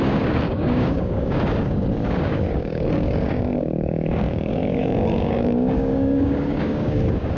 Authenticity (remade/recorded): remade